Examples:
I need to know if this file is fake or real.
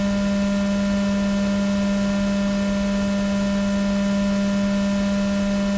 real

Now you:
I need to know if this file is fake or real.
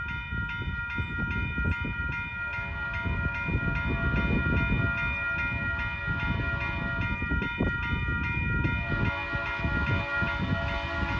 real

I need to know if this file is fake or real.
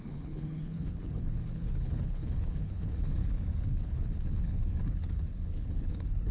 fake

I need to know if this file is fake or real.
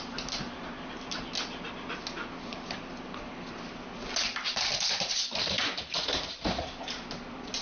real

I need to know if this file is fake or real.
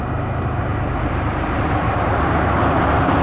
fake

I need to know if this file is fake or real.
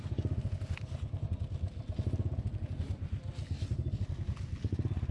real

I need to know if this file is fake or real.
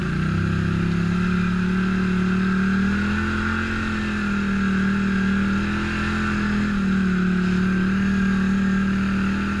real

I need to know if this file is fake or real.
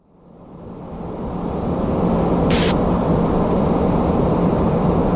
fake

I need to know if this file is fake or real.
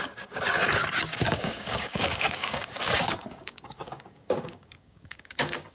fake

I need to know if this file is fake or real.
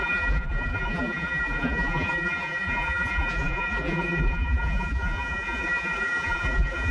fake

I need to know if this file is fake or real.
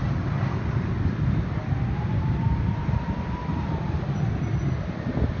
real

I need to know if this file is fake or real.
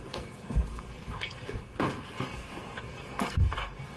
fake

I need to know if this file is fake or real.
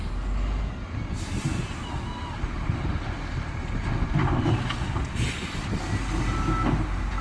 real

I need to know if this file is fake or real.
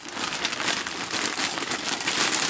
real